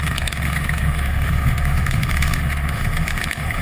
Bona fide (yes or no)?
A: no